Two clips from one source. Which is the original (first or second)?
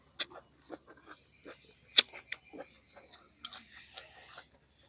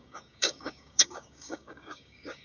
first